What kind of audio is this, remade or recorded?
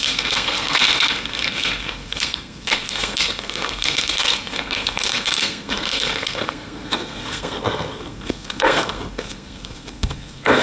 remade